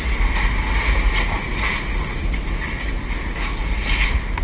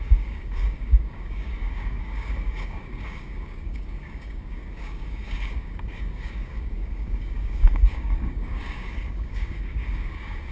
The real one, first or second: first